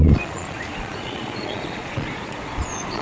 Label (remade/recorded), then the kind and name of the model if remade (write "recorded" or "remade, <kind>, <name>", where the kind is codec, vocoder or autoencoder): remade, vocoder, Vocos